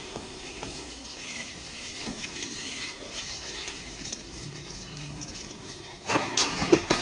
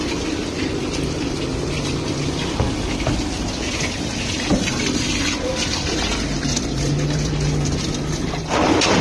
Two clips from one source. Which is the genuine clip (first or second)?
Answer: second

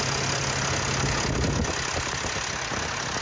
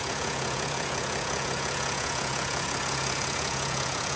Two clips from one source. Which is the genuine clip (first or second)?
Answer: first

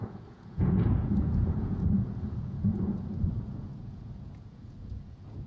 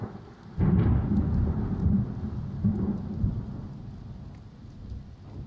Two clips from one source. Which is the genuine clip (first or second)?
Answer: second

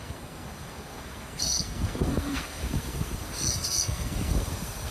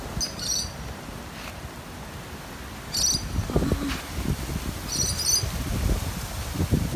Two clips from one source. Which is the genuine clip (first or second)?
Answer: second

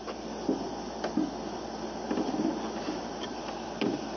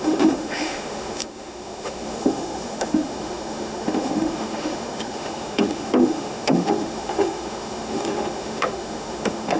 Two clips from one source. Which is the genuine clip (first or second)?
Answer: first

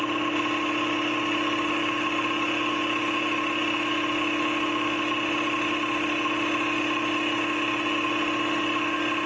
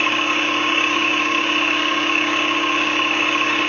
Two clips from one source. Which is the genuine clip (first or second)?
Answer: first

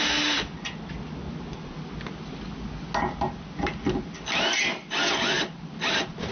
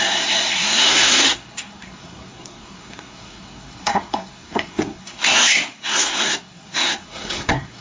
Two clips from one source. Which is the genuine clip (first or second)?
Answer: first